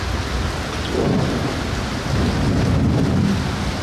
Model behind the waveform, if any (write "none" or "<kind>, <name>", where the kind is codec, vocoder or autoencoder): none